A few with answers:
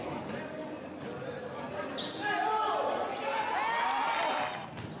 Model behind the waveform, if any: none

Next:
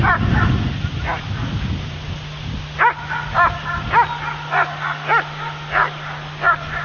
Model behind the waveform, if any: none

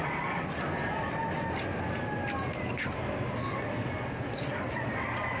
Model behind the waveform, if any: none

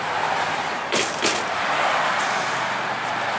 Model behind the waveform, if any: none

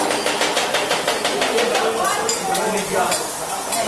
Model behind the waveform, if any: none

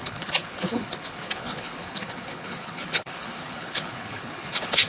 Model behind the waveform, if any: codec, HILCodec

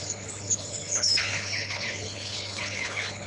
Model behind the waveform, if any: codec, HILCodec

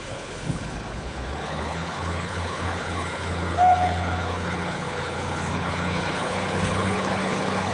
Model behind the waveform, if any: codec, HILCodec